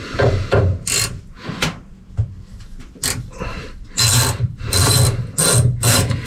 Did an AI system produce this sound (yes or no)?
no